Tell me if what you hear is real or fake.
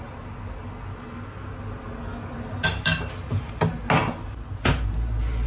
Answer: real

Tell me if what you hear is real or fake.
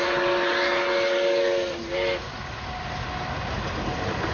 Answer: real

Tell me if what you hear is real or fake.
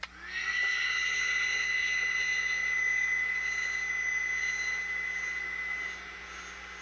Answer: real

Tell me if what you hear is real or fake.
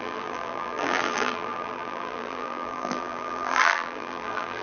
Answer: fake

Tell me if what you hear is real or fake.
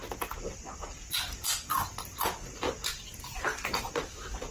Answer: real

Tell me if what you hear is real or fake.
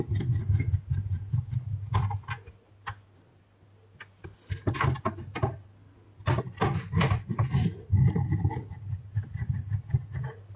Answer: real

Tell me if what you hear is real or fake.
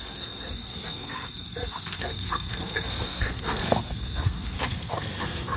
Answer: fake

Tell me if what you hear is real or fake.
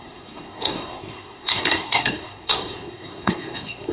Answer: fake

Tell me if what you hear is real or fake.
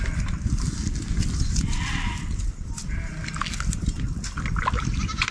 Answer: real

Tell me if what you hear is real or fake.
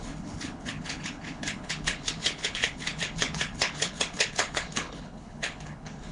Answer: fake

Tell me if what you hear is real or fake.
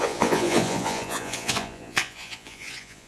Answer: fake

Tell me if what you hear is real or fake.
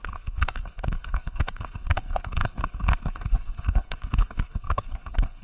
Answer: fake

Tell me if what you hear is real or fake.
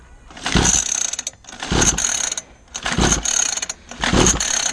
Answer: real